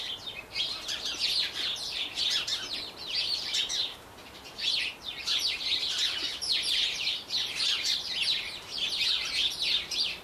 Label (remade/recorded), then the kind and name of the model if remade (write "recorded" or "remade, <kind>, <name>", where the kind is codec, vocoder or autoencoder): remade, vocoder, BigVGAN v2